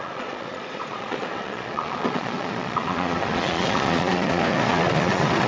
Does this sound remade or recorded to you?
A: remade